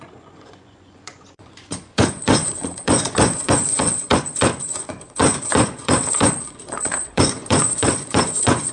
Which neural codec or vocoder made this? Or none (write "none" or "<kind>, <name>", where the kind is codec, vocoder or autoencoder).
vocoder, Vocos